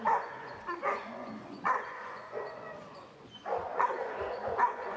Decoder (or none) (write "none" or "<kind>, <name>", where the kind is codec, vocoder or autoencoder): vocoder, Vocos